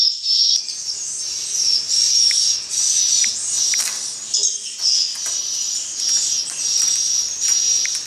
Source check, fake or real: real